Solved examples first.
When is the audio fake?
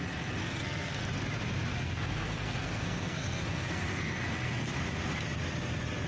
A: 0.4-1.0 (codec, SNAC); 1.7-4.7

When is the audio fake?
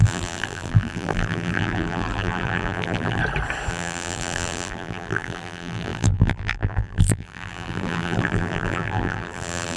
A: 0.0-3.2 (vocoder, BigVGAN v2); 3.7-9.8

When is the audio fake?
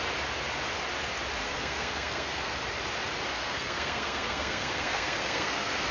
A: 1.4-2.6 (codec, SNAC); 3.3-5.9